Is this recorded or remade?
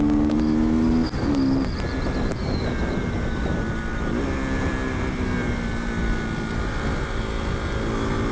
recorded